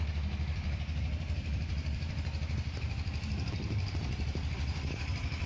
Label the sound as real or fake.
fake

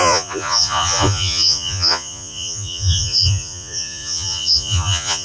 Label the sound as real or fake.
fake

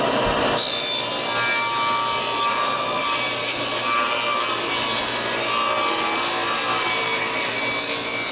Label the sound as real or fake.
real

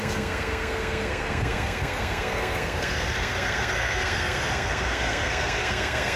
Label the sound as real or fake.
fake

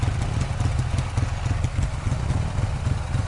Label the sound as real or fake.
real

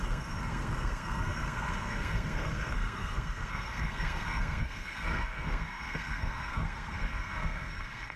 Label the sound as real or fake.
fake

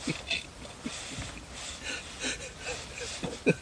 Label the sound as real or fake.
real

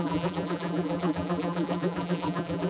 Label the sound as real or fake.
fake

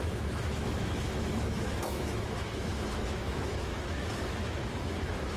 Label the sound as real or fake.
fake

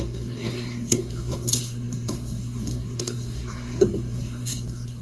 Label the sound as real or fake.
fake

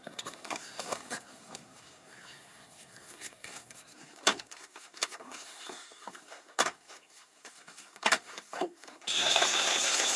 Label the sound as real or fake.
fake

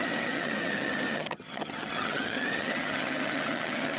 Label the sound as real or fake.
fake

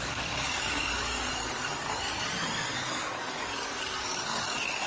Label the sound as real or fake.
fake